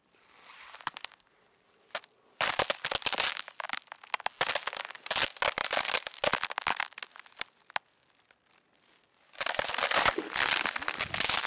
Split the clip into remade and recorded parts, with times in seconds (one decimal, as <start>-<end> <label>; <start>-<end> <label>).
0.0-11.5 recorded